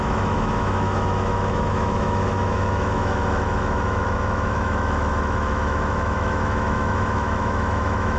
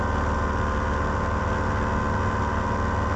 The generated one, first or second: first